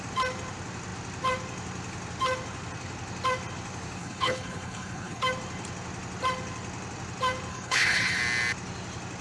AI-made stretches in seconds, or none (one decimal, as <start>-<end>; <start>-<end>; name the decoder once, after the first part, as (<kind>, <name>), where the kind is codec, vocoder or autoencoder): 4.0-5.2 (codec, HILCodec); 7.5-8.2

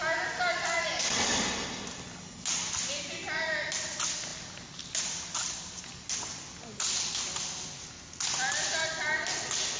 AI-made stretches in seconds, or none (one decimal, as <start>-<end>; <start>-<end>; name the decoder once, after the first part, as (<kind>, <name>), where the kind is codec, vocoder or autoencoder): none